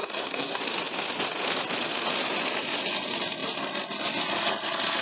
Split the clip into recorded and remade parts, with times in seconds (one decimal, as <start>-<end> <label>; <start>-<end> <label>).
0.0-0.6 remade; 0.6-5.0 recorded